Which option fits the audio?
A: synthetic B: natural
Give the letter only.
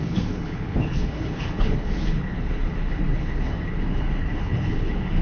A